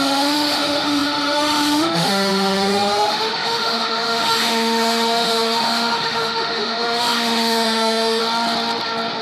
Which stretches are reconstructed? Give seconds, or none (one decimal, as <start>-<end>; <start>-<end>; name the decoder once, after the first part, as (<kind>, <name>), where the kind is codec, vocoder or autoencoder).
0.0-8.2 (autoencoder, DAC-VAE)